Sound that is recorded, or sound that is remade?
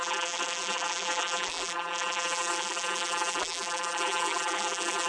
remade